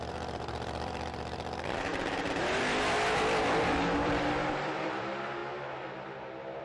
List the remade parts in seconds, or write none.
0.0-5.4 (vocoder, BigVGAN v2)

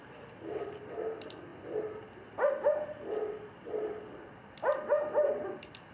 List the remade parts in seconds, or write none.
none

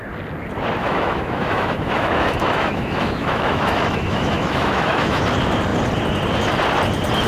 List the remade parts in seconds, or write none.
0.8-5.2 (autoencoder, DAC-VAE)

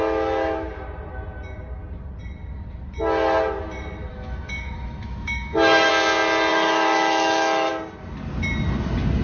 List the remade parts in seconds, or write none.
4.1-5.9 (autoencoder, DAC-VAE); 6.5-7.7

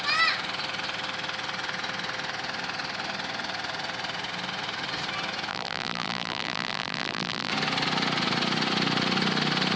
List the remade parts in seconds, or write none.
5.5-7.5 (vocoder, BigVGAN v2)

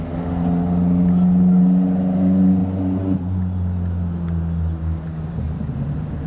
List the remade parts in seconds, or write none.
none